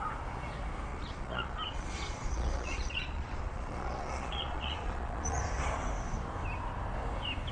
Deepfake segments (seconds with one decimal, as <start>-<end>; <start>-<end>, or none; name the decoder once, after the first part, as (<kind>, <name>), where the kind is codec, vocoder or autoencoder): 0.9-5.4 (vocoder, Vocos)